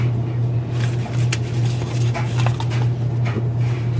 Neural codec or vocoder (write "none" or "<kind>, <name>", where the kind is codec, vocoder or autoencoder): none